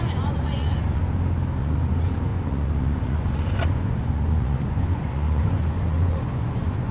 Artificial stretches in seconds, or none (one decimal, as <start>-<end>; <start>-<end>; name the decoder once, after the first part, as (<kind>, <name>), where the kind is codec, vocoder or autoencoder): 0.0-1.0 (vocoder, Vocos); 1.6-6.9